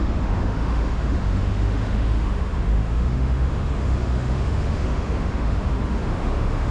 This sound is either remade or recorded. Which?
remade